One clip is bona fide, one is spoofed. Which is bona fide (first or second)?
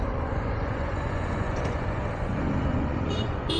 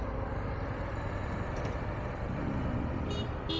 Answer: second